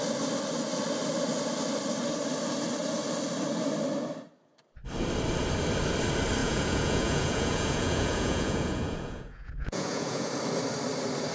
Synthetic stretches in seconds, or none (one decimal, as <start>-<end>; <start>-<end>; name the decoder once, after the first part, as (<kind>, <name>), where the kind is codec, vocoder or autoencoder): 6.4-10.3 (vocoder, Vocos)